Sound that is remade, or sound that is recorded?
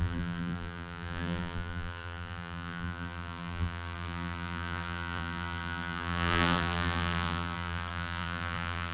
remade